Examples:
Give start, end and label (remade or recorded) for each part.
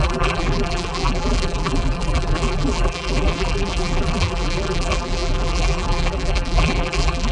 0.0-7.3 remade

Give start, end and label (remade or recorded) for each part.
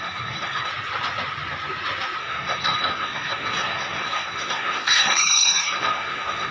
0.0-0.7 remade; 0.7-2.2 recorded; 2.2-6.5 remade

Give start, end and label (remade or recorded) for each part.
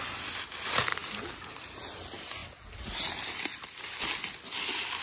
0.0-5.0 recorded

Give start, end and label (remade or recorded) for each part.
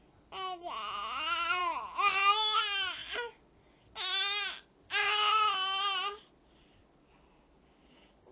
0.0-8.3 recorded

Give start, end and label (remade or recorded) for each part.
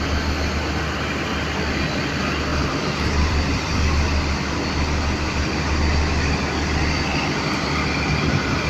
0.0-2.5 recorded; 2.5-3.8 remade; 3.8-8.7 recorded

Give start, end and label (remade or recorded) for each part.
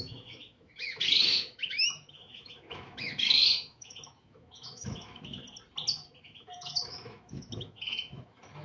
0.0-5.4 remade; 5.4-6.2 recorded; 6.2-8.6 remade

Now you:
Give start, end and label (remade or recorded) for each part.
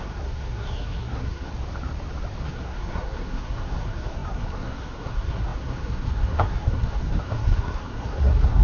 0.0-1.5 remade; 1.5-2.4 recorded; 2.4-8.6 remade